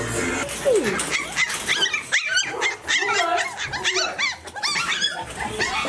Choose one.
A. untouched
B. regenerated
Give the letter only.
A